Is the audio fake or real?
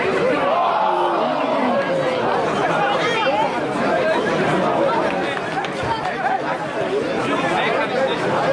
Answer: real